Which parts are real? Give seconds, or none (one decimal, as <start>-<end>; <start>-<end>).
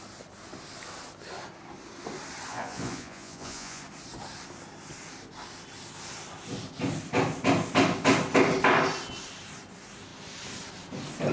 0.0-2.5; 3.8-11.3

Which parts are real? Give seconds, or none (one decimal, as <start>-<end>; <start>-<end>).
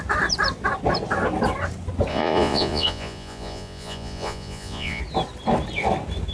0.0-2.1; 5.0-6.3